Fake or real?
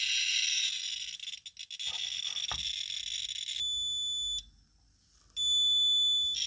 real